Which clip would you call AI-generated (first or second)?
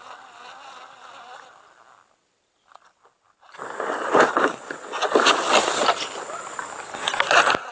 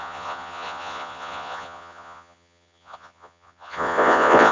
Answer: second